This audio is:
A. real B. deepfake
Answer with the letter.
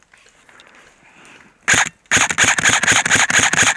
A